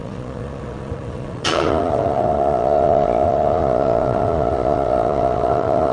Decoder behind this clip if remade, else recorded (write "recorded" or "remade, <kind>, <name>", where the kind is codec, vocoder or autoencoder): remade, vocoder, Vocos